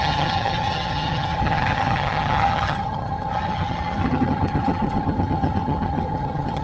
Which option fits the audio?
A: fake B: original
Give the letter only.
A